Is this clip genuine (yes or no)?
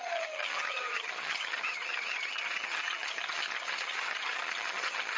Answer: no